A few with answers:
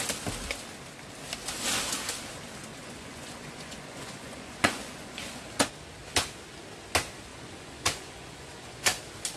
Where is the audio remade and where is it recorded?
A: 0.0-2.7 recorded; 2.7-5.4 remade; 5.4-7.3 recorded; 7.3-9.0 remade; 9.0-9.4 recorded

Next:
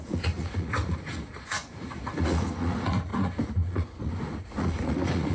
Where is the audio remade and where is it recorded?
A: 0.0-5.3 remade

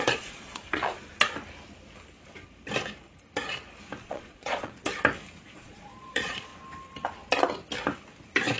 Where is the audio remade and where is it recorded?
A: 0.0-1.1 remade; 1.1-4.0 recorded; 4.0-4.9 remade; 4.9-5.4 recorded; 5.4-6.5 remade; 6.5-8.6 recorded

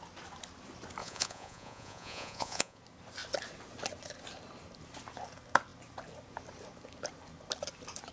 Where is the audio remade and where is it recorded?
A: 0.0-1.0 recorded; 1.0-2.8 remade; 2.8-8.1 recorded